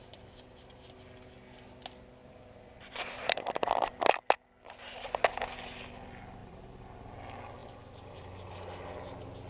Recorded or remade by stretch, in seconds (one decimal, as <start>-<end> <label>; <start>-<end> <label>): 0.0-2.2 recorded; 2.2-3.9 remade; 3.9-6.4 recorded; 6.4-7.1 remade; 7.1-7.6 recorded; 7.6-8.6 remade; 8.6-9.5 recorded